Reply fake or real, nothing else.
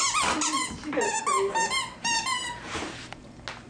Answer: real